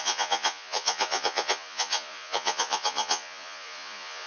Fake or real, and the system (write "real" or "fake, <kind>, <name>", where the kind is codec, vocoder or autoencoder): fake, vocoder, Vocos